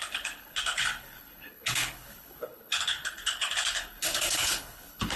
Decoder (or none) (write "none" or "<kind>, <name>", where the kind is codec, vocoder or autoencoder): codec, HILCodec